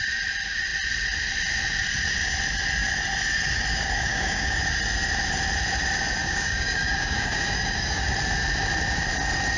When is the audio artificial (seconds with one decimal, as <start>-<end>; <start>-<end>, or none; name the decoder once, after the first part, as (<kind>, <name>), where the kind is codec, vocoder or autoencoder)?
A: 3.7-4.6 (codec, DAC); 6.2-8.0